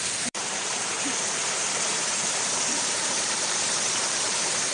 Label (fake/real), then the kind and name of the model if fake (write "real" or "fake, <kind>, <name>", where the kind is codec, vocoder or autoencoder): fake, vocoder, BigVGAN v2